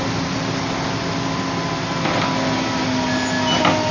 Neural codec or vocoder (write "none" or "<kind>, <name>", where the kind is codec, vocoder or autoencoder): none